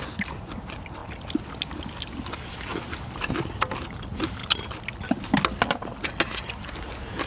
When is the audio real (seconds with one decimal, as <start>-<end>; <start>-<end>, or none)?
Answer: 0.0-7.3